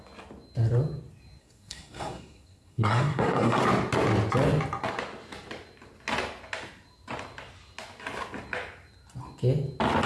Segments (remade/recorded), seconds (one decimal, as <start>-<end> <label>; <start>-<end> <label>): 0.0-1.4 recorded; 1.4-3.6 remade; 3.6-10.1 recorded